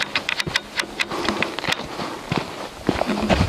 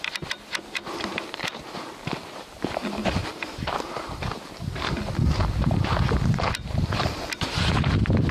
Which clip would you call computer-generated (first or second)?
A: second